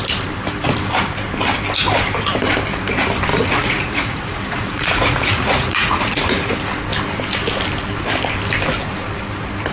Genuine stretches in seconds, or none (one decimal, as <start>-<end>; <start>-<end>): 0.0-3.3; 6.5-9.7